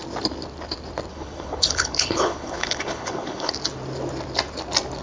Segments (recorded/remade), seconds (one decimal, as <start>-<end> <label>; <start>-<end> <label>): 0.0-1.1 recorded; 1.1-3.5 remade; 3.5-5.0 recorded